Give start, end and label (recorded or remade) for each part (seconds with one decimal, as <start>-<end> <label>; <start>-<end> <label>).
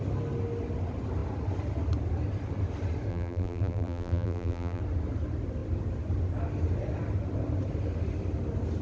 0.0-3.1 recorded; 3.1-4.8 remade; 4.8-8.8 recorded